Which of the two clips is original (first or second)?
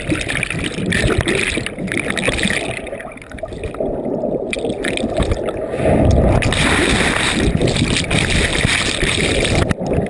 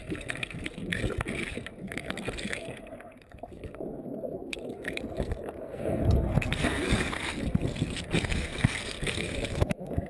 first